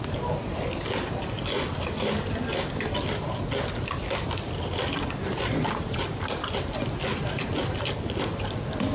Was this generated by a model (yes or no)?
no